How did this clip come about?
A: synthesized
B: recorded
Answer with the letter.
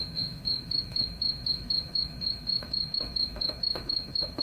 A